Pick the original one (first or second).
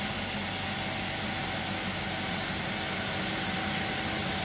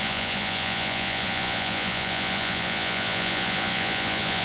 first